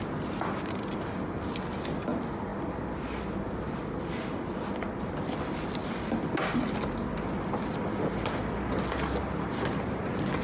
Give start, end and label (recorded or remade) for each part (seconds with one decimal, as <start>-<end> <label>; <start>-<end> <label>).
0.0-10.4 recorded